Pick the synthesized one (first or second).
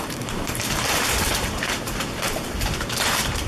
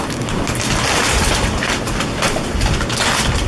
first